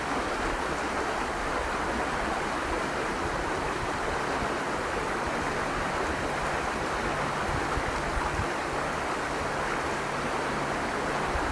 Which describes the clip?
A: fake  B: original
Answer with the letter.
B